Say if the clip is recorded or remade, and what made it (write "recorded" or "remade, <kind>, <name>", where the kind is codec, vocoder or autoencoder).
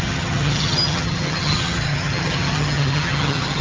remade, vocoder, HiFi-GAN